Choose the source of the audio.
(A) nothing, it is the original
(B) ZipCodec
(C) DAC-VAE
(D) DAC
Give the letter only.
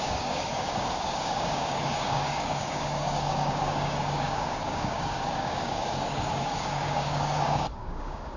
D